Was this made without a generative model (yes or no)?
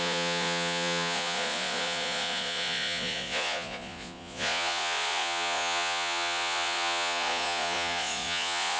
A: no